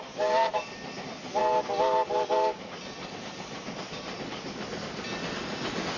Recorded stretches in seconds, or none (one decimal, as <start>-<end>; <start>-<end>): 0.0-6.0